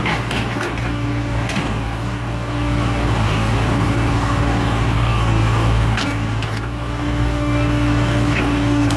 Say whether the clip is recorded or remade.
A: remade